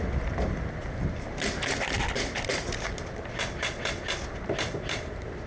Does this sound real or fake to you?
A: real